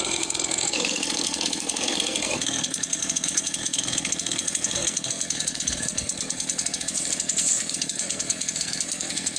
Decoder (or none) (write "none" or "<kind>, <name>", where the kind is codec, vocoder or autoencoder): codec, SNAC